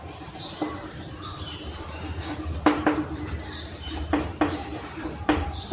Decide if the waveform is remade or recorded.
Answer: remade